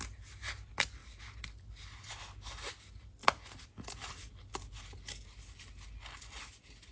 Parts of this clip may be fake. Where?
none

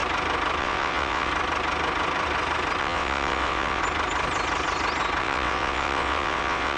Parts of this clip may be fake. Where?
0.6-1.3 (vocoder, WaveNeXt); 2.8-3.8; 5.2-6.8

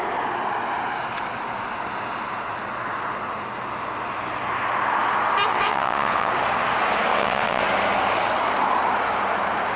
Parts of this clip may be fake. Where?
5.5-6.3 (vocoder, WaveNeXt); 7.1-7.6